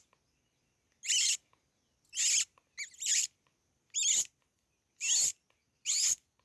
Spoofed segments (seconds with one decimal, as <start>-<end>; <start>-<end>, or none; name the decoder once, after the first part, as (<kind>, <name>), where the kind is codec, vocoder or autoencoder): none